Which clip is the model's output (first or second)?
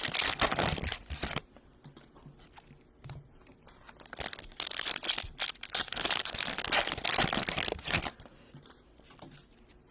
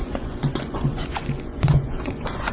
second